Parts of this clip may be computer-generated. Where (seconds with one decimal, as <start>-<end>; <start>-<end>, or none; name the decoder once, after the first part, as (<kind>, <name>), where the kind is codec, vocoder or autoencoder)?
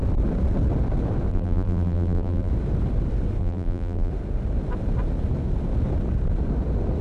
1.3-2.5 (vocoder, BigVGAN v2); 3.4-4.1